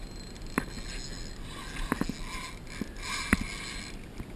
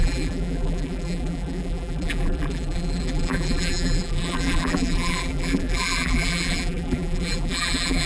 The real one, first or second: first